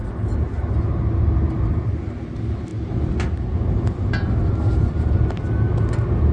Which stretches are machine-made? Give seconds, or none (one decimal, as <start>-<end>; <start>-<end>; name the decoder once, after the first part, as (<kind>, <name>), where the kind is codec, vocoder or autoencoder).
none